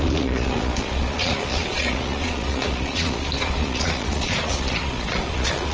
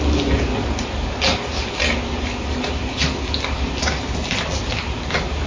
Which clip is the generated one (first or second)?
first